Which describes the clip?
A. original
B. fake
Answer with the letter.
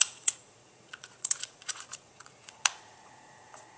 B